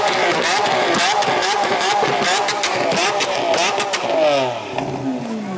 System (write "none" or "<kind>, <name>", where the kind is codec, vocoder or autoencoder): none